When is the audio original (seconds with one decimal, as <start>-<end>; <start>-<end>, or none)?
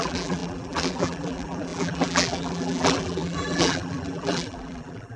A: none